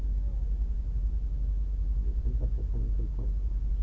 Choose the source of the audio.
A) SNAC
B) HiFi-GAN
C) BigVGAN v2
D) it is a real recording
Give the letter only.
D